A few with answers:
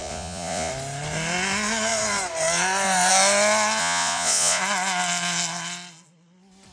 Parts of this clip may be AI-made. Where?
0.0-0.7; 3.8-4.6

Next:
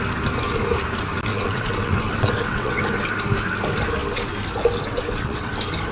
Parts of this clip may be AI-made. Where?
1.3-2.8; 4.9-5.5

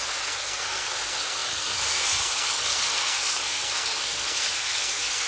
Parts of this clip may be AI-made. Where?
0.0-5.3